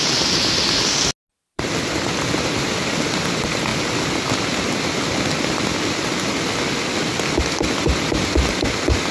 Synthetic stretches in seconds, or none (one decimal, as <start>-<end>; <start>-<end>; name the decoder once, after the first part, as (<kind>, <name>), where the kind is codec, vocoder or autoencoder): none